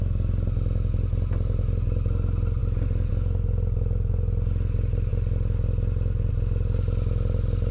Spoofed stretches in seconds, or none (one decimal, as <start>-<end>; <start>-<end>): none